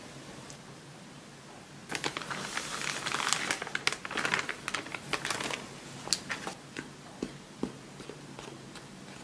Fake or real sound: real